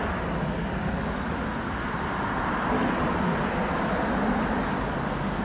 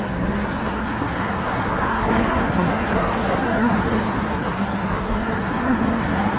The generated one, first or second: second